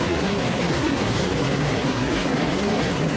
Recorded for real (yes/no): no